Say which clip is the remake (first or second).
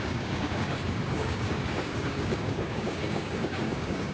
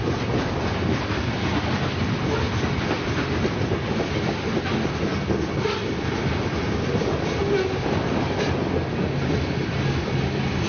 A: first